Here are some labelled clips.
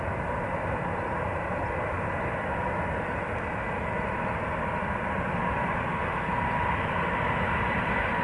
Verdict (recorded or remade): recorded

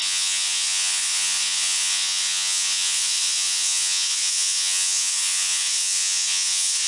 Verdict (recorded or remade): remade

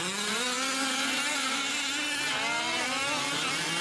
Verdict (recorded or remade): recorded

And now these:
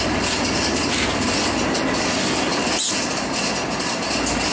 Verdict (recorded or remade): recorded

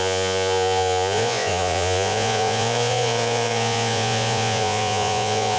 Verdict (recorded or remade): remade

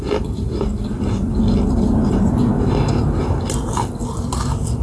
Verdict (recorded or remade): recorded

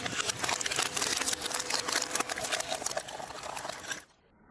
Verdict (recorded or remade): remade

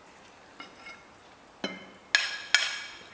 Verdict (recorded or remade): recorded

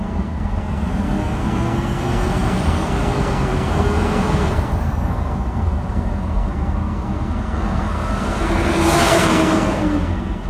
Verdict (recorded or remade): remade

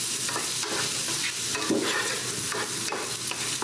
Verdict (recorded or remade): recorded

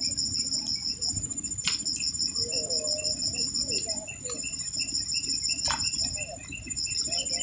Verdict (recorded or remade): recorded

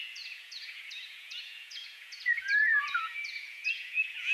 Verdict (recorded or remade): remade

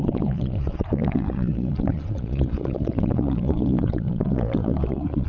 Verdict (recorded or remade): remade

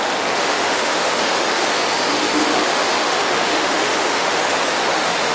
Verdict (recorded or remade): remade